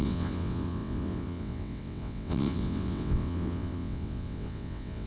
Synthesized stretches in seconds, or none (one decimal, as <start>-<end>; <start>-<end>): 0.0-5.1